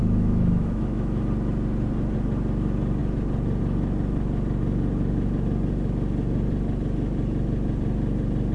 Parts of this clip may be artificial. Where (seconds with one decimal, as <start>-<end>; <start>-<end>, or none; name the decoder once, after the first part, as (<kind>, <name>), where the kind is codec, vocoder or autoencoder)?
0.0-1.2 (autoencoder, DAC-VAE)